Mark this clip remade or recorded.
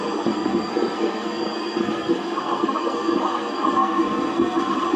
remade